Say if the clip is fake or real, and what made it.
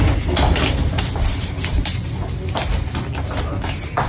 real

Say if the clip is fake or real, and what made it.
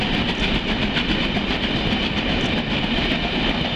real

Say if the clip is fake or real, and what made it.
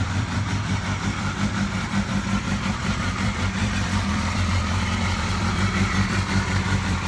fake, vocoder, BigVGAN v2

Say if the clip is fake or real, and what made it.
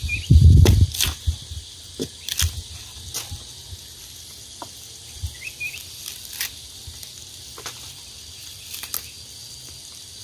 real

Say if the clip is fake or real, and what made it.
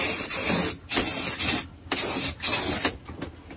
real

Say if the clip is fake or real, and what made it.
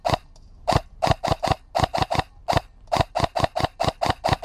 fake, vocoder, BigVGAN v2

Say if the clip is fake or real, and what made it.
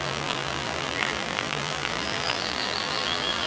fake, vocoder, BigVGAN v2